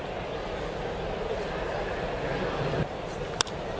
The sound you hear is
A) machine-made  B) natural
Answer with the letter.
B